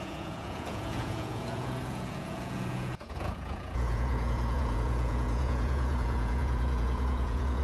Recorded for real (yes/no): no